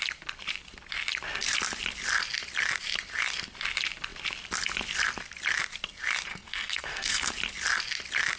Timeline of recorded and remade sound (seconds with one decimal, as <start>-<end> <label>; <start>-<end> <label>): 0.0-6.3 recorded; 6.3-7.3 remade; 7.3-8.4 recorded